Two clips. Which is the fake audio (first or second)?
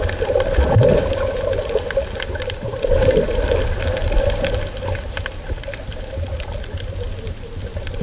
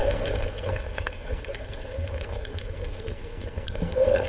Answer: second